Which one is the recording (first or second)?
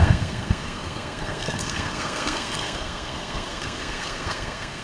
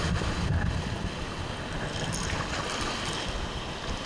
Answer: second